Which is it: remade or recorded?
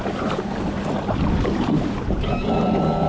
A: recorded